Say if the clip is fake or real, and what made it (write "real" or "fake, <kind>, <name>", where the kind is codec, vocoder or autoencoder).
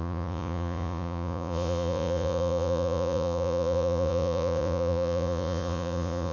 fake, vocoder, Vocos